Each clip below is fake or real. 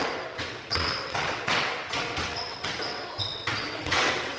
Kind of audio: fake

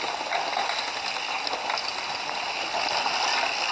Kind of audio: real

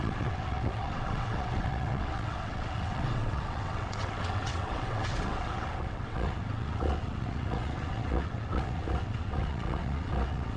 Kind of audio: fake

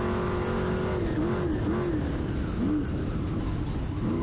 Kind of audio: real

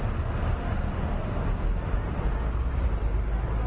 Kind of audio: real